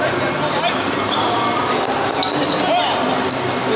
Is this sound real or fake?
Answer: real